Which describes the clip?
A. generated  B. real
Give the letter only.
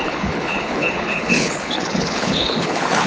A